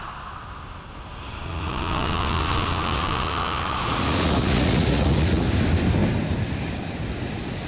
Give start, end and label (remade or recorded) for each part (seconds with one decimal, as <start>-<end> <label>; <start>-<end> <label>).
0.0-1.4 recorded; 1.4-5.4 remade; 5.4-7.7 recorded